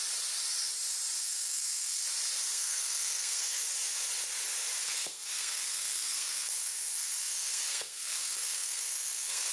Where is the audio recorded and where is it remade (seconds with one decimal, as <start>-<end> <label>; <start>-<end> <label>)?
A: 0.0-1.2 recorded; 1.2-2.0 remade; 2.0-2.5 recorded; 2.5-3.6 remade; 3.6-4.8 recorded; 4.8-9.5 remade